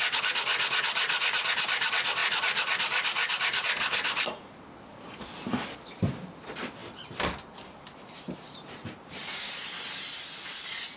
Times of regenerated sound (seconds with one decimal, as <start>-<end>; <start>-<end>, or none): 6.8-9.7